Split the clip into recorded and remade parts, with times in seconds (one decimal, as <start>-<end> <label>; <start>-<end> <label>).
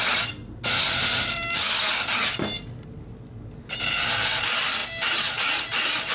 0.0-4.8 recorded; 4.8-5.3 remade; 5.3-6.1 recorded